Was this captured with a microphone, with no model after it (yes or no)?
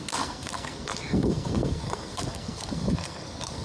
no